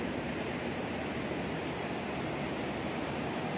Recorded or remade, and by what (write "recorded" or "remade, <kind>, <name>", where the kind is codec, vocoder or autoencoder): remade, vocoder, BigVGAN v2